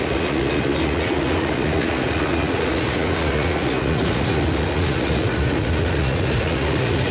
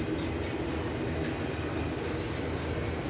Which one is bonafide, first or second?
second